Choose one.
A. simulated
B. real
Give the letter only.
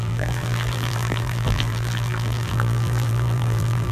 A